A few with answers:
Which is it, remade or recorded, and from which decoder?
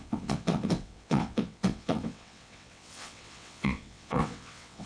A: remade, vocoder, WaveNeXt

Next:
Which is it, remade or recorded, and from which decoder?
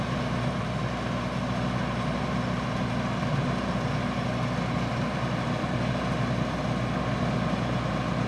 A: recorded